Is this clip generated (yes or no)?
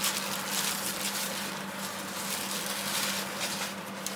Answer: no